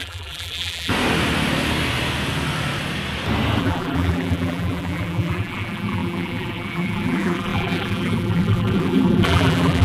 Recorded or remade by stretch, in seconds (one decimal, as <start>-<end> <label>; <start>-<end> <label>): 0.0-0.9 remade; 0.9-3.6 recorded; 3.6-9.8 remade